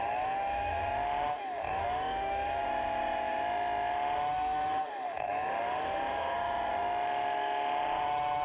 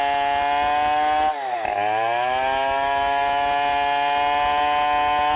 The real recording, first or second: second